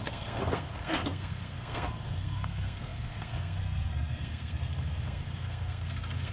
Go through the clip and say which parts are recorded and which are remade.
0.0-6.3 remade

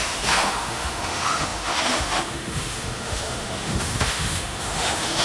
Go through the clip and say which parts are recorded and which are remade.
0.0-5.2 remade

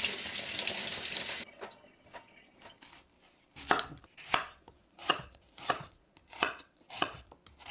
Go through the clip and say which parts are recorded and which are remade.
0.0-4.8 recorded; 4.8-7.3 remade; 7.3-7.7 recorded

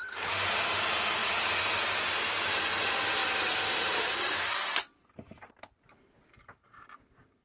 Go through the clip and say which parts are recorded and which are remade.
0.0-7.4 recorded